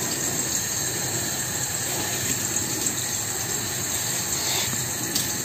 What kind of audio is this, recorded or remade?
recorded